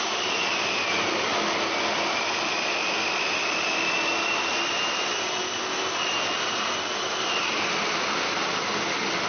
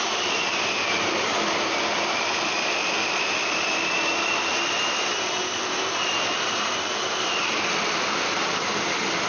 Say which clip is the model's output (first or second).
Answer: second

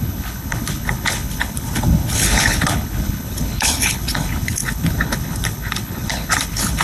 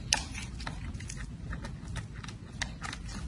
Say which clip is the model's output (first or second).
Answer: first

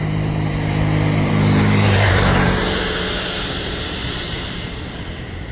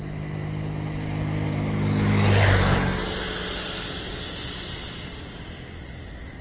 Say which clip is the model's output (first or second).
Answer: first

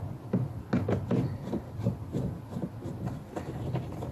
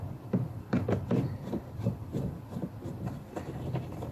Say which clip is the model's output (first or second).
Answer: second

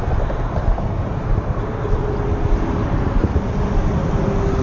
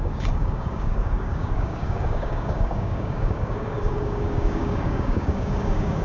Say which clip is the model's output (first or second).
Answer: second